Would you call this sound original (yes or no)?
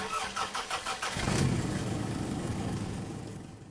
no